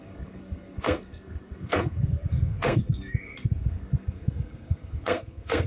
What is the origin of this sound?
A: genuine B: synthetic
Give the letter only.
B